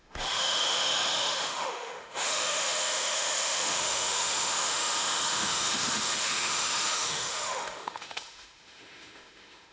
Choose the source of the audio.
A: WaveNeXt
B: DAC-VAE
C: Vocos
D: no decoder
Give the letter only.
B